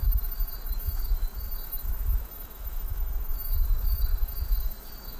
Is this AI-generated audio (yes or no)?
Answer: yes